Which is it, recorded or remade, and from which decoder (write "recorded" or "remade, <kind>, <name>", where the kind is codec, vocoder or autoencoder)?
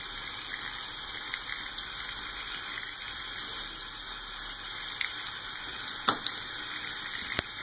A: recorded